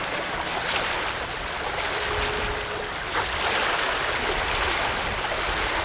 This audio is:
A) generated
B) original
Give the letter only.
B